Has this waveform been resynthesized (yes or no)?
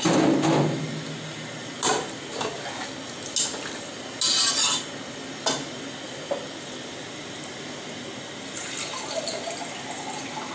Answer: no